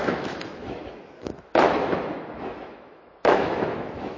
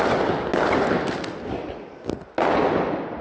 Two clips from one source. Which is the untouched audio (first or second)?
second